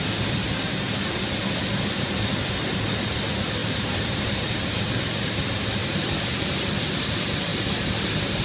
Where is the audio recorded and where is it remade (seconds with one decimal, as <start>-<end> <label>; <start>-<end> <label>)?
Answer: 0.0-3.6 recorded; 3.6-4.9 remade; 4.9-5.8 recorded; 5.8-6.5 remade; 6.5-7.5 recorded; 7.5-8.4 remade